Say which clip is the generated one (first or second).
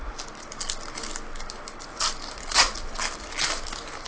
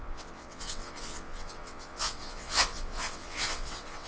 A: second